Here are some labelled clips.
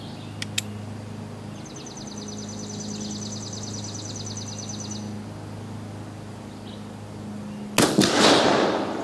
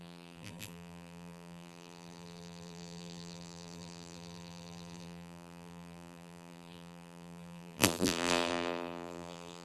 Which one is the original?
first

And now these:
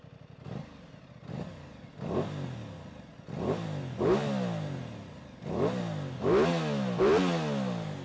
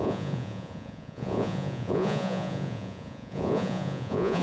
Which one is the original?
first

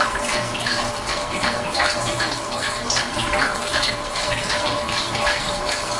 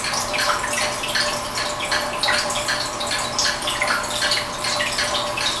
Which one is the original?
second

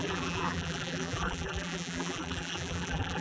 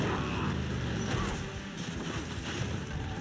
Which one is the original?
second